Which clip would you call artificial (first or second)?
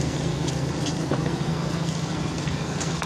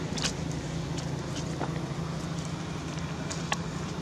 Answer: first